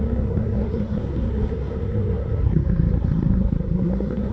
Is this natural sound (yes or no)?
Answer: no